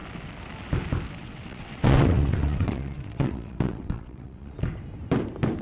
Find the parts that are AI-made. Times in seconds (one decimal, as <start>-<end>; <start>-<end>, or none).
1.2-4.6